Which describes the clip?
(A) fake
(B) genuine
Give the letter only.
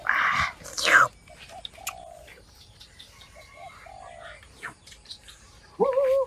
B